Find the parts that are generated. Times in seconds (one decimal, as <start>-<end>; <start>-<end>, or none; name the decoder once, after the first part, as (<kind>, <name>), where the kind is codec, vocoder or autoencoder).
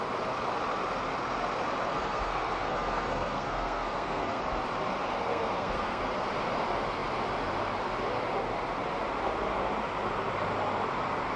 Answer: 1.9-4.4 (codec, SNAC); 5.3-6.0